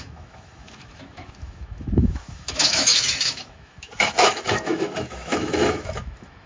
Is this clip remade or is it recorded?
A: remade